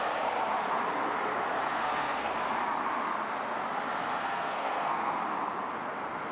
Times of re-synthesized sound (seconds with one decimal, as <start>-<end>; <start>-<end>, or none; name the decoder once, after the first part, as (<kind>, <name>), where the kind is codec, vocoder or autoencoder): 1.7-2.3 (codec, SNAC); 4.2-5.1